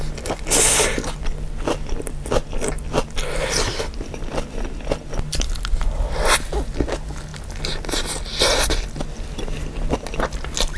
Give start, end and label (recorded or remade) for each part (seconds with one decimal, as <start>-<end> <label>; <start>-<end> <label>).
0.0-10.8 recorded